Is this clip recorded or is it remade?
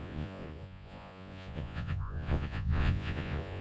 remade